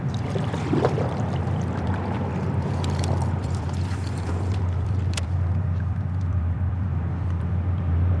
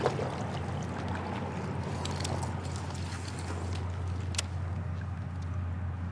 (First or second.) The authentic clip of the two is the second